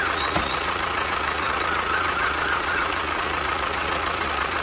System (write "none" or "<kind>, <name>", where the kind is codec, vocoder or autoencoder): vocoder, Vocos